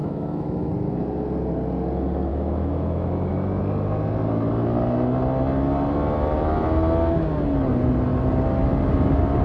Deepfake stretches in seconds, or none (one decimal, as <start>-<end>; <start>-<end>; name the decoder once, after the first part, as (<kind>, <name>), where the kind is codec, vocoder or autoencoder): 0.0-0.7 (autoencoder, DAC-VAE); 2.3-3.3